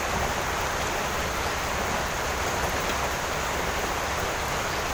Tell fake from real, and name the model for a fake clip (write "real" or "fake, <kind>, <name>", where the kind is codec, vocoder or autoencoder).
fake, vocoder, BigVGAN v2